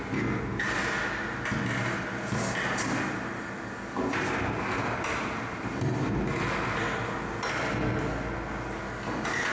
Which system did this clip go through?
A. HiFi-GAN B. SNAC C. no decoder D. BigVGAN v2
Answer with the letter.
C